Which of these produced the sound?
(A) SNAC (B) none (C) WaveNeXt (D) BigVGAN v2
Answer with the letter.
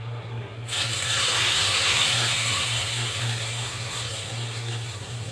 A